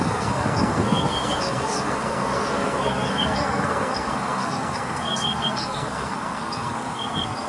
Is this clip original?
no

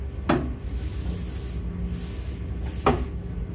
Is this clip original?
yes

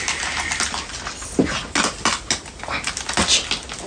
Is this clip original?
yes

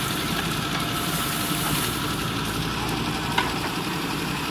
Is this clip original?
no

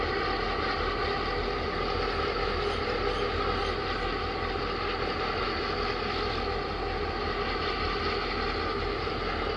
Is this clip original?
yes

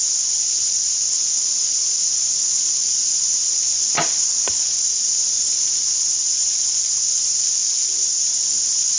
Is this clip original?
yes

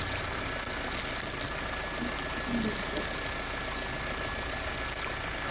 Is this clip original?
yes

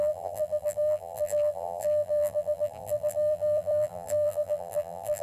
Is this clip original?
no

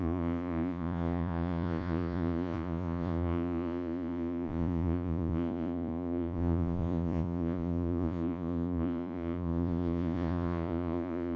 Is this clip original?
no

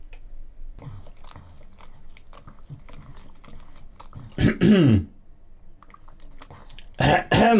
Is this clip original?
yes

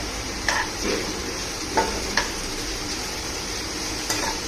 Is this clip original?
no